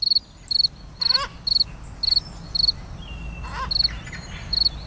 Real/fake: real